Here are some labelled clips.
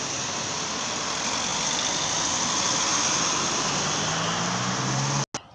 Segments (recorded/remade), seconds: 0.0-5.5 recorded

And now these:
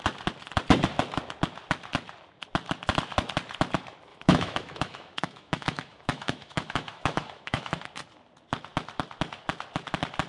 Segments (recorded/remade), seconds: 0.0-4.1 recorded; 4.1-7.8 remade; 7.8-10.3 recorded